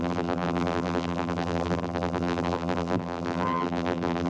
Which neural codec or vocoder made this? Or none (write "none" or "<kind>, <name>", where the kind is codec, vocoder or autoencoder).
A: vocoder, BigVGAN v2